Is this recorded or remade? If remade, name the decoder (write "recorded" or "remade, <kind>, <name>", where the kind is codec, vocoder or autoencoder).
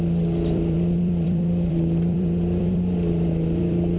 remade, vocoder, BigVGAN v2